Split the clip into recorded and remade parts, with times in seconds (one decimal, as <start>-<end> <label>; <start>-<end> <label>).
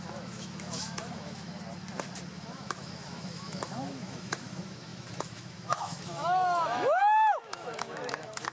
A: 0.0-1.5 remade; 1.5-2.3 recorded; 2.3-8.5 remade